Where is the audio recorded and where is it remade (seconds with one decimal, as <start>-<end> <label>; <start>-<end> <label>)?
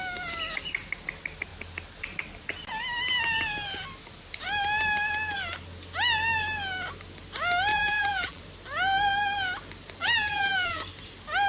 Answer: 0.0-7.7 recorded; 7.7-8.4 remade; 8.4-10.0 recorded; 10.0-10.8 remade; 10.8-11.5 recorded